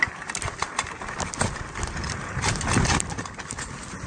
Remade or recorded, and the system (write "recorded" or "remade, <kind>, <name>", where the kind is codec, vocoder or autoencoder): recorded